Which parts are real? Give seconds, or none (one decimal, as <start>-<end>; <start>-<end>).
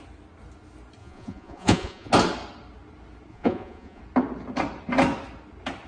0.0-1.0; 2.1-3.3; 4.0-5.9